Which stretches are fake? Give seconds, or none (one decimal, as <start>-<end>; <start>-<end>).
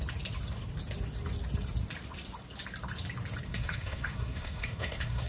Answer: 3.5-5.3